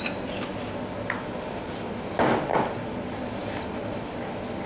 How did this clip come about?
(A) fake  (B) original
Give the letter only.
B